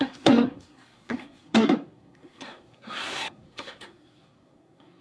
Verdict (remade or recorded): remade